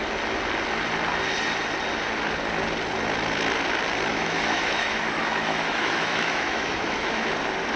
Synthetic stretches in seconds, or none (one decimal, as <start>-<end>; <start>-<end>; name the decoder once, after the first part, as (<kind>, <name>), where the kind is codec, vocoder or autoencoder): 4.1-7.3 (autoencoder, DAC-VAE)